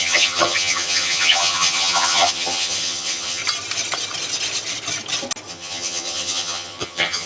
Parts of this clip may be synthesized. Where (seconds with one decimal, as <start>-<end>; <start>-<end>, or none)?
0.0-3.4; 5.5-7.3